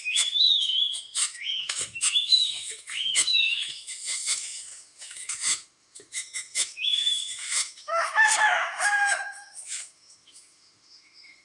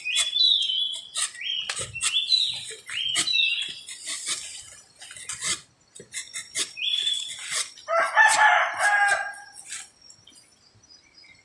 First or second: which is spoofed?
first